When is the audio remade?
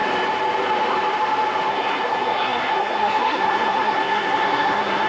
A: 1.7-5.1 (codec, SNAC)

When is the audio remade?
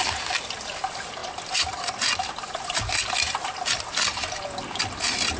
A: none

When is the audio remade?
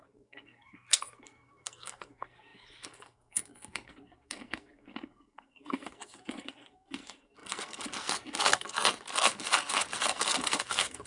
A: 0.0-11.1 (codec, SNAC)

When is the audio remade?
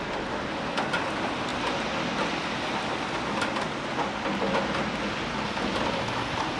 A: none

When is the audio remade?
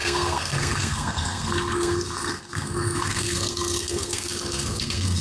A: 0.0-5.2 (codec, SNAC)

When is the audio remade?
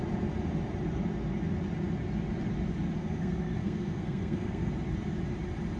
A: 3.0-4.7 (codec, SNAC)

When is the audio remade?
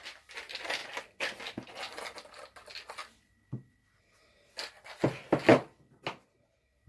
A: none